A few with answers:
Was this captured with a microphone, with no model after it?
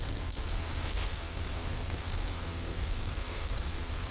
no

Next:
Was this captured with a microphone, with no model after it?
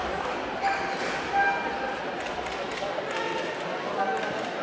yes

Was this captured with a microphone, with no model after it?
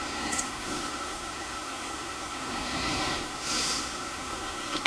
no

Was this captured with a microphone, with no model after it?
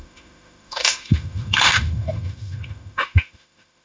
no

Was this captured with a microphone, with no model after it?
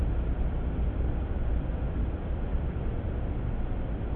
yes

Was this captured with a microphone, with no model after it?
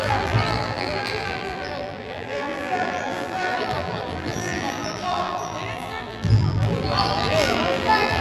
no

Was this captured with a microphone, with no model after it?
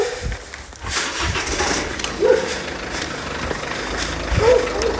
yes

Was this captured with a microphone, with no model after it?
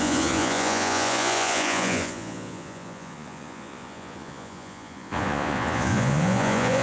no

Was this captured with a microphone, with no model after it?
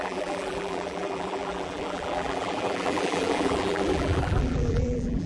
no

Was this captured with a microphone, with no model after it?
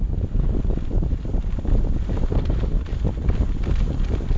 yes